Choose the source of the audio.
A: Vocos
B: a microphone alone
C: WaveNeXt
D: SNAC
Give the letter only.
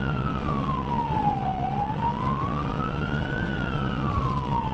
C